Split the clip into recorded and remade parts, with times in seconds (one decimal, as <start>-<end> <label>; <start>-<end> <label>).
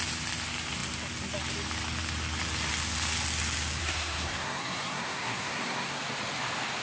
0.0-3.8 recorded; 3.8-6.0 remade; 6.0-6.8 recorded